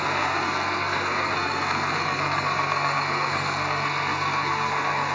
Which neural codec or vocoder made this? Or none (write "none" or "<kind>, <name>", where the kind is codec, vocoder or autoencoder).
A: codec, SNAC